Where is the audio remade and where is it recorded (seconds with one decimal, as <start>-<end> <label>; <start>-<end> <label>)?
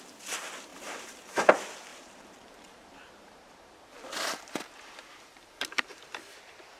0.0-0.7 recorded; 0.7-1.5 remade; 1.5-1.9 recorded; 1.9-6.0 remade; 6.0-6.8 recorded